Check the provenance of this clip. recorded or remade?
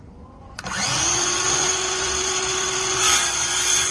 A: remade